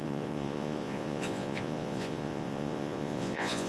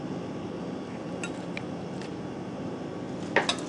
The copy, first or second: first